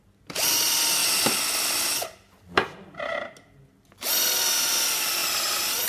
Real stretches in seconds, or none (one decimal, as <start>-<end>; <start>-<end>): 0.0-5.9